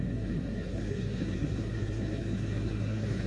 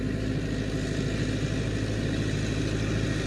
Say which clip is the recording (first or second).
second